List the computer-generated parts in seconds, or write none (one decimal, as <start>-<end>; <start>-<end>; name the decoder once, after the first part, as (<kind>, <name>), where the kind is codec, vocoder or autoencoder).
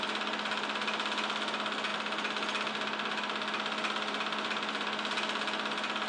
none